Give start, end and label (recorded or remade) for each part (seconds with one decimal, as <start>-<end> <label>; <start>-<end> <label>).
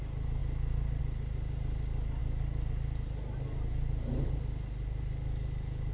0.0-5.9 recorded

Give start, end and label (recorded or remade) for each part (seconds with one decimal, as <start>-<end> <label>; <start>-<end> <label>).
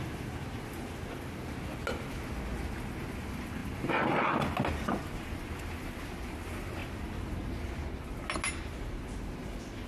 0.0-9.9 recorded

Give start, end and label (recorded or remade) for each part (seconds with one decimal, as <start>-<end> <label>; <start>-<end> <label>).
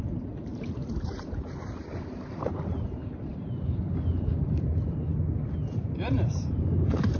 0.0-5.1 remade; 5.1-5.6 recorded; 5.6-7.2 remade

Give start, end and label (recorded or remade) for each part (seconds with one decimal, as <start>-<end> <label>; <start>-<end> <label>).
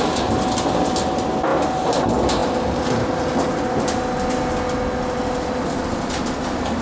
0.0-1.5 recorded; 1.5-2.0 remade; 2.0-6.8 recorded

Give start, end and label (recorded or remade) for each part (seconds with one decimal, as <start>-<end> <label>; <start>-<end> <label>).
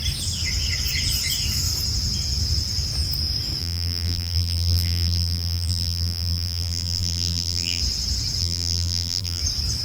0.0-3.6 recorded; 3.6-7.8 remade; 7.8-8.4 recorded; 8.4-9.4 remade; 9.4-9.8 recorded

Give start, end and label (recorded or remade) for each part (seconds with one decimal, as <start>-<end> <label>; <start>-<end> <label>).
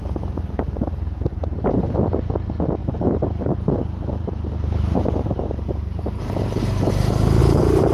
0.0-1.3 recorded; 1.3-1.9 remade; 1.9-2.8 recorded; 2.8-7.4 remade; 7.4-7.9 recorded